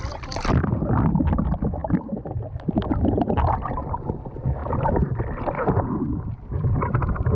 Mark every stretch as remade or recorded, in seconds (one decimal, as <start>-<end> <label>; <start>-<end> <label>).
0.0-7.3 recorded